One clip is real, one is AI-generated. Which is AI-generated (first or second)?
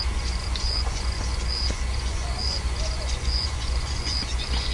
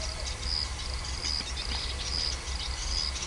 first